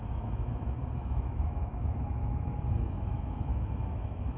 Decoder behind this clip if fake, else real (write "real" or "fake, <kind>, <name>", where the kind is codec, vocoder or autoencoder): fake, autoencoder, DAC-VAE